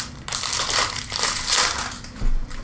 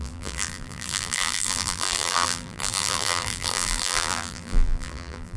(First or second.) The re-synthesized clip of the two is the second